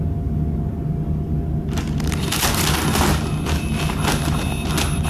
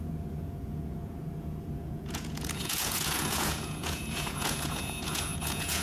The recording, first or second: first